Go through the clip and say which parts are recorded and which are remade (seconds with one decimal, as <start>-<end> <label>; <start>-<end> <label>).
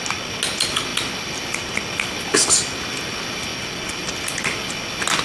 0.0-5.2 recorded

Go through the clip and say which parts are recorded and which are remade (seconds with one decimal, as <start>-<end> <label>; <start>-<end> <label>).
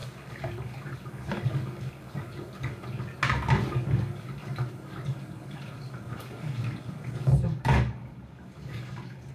0.0-3.1 remade; 3.1-3.7 recorded; 3.7-9.3 remade